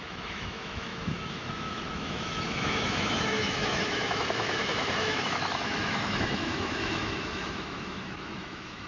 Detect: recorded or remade remade